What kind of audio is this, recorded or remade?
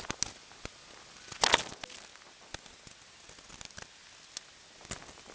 recorded